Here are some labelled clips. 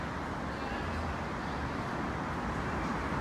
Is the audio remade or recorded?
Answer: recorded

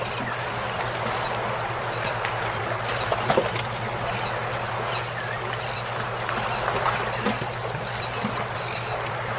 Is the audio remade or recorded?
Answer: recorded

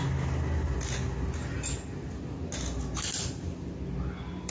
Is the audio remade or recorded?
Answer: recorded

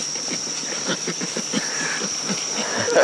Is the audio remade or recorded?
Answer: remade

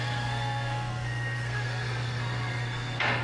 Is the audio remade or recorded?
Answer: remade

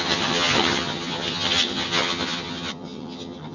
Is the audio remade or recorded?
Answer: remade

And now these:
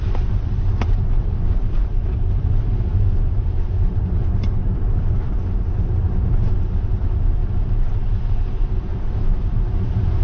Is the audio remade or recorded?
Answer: remade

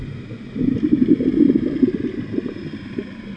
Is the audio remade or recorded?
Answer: recorded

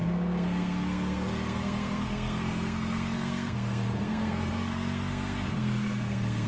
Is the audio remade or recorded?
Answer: remade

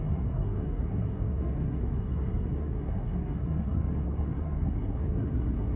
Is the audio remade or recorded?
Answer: remade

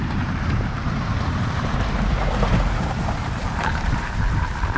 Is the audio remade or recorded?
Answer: remade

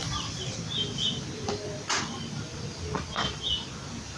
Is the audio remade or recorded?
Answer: recorded